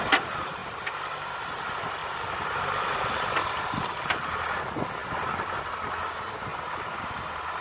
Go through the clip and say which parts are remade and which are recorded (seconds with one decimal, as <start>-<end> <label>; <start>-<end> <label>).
0.0-0.6 recorded; 0.6-1.5 remade; 1.5-2.0 recorded; 2.0-4.6 remade; 4.6-6.5 recorded; 6.5-7.6 remade